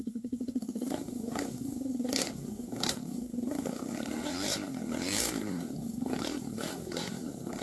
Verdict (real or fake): fake